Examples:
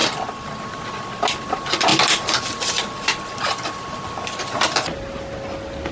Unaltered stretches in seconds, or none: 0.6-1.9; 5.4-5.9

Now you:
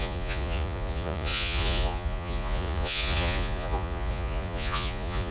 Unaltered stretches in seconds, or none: none

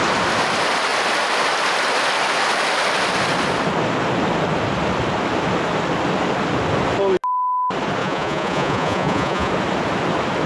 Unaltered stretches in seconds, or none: 0.0-8.0; 9.5-10.5

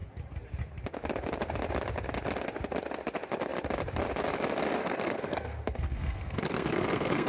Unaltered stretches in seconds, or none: 0.0-4.8

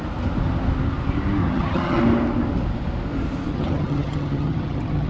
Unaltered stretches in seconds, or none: 0.0-1.4; 2.0-3.5

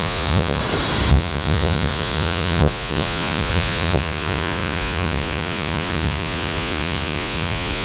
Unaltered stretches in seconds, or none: 0.6-1.1

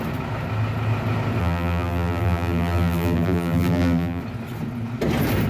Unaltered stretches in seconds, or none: 0.0-1.4; 4.2-5.5